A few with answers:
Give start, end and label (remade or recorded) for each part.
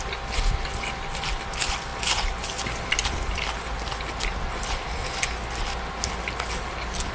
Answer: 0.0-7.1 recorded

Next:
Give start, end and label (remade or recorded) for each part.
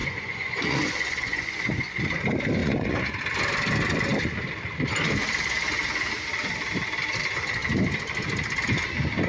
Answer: 0.0-2.0 remade; 2.0-2.6 recorded; 2.6-3.2 remade; 3.2-9.3 recorded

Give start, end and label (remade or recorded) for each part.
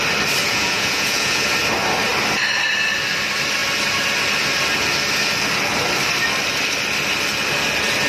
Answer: 0.0-0.4 recorded; 0.4-1.5 remade; 1.5-8.1 recorded